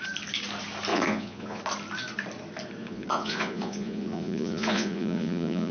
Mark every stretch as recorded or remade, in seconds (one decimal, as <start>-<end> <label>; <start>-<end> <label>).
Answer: 0.0-0.9 recorded; 0.9-1.6 remade; 1.6-2.8 recorded; 2.8-5.7 remade